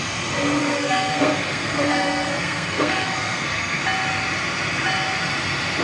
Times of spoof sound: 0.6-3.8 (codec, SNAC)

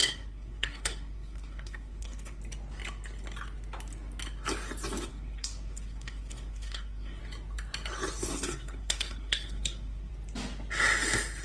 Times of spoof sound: 0.0-2.4 (codec, SNAC); 5.1-7.2; 8.3-10.1

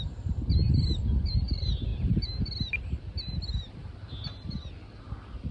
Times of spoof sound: none

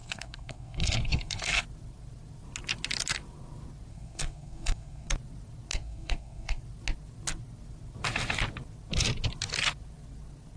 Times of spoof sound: 0.0-1.6 (codec, SNAC); 3.9-5.1; 5.7-6.6

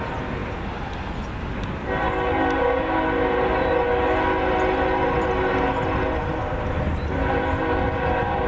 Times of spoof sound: none

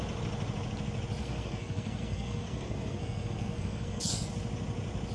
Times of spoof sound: 1.2-4.3 (codec, SNAC)

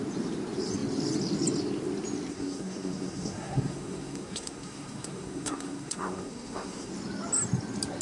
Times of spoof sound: 2.3-6.9 (codec, SNAC)

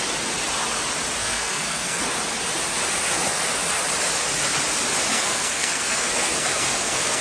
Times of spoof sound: 1.2-2.0 (codec, SNAC); 5.1-7.2